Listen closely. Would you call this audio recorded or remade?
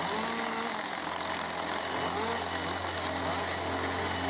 recorded